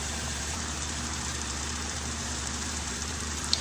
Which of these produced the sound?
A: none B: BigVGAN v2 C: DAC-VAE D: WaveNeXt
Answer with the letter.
B